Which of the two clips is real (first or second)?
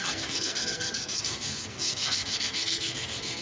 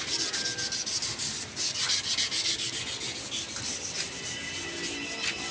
second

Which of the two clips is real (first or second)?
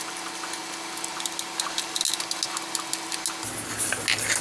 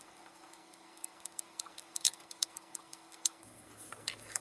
first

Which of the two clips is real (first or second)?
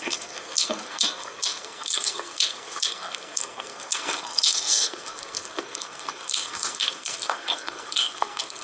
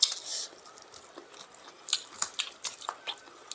second